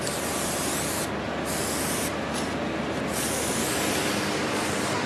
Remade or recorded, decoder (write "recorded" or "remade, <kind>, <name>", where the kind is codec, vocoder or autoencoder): recorded